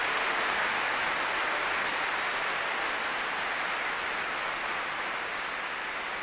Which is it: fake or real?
real